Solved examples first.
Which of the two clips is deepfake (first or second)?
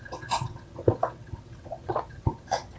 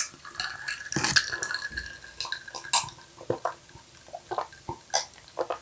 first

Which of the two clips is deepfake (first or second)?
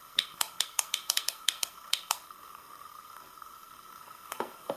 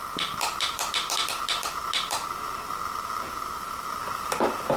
first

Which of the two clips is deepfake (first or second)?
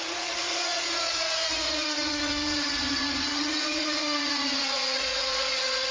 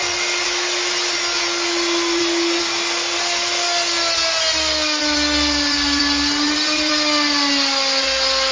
first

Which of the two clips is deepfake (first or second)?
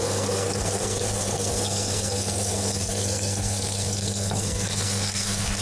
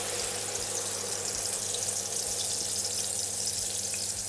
first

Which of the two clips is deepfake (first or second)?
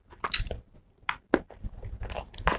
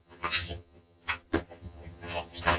second